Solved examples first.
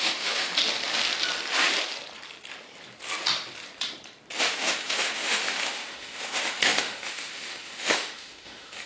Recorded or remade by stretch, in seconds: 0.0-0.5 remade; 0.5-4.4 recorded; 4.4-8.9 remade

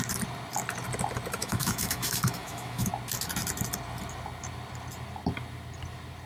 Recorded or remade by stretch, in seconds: 0.0-1.4 recorded; 1.4-2.9 remade; 2.9-6.3 recorded

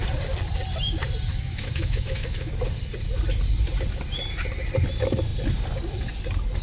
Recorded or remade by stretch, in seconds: 0.0-1.3 recorded; 1.3-2.5 remade; 2.5-6.6 recorded

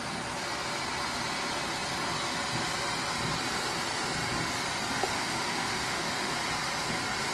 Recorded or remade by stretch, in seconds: 0.0-5.0 recorded; 5.0-6.3 remade; 6.3-7.3 recorded

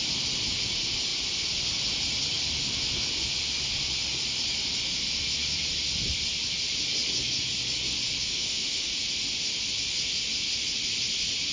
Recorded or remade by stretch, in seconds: 0.0-8.3 recorded; 8.3-8.9 remade; 8.9-11.5 recorded